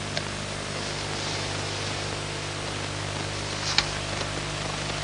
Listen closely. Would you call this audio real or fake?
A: real